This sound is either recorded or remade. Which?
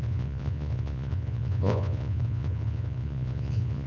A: remade